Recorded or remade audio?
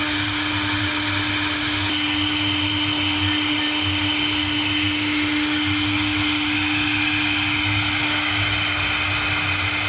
recorded